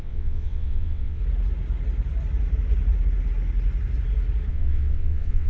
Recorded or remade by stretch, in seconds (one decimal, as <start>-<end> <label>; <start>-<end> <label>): 0.0-1.2 remade; 1.2-4.5 recorded; 4.5-5.5 remade